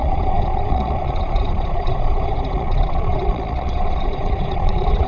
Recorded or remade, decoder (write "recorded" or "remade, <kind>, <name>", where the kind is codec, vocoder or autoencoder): remade, vocoder, Vocos